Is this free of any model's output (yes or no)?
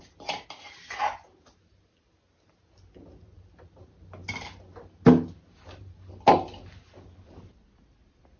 yes